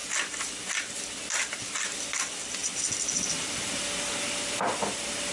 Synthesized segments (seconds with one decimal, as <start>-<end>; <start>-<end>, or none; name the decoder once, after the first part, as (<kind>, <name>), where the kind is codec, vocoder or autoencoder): none